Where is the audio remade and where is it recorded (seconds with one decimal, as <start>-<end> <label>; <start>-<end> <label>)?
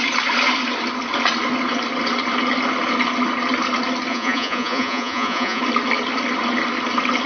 0.0-4.1 recorded; 4.1-5.6 remade; 5.6-7.3 recorded